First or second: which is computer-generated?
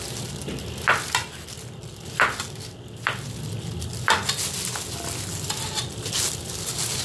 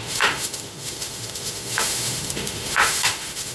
second